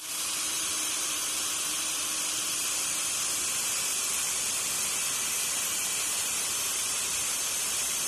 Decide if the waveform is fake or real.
fake